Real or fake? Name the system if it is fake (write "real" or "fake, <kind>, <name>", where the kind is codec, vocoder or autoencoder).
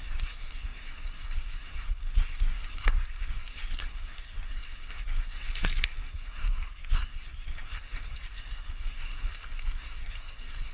fake, codec, SNAC